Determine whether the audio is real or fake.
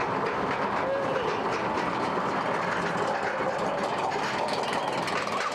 real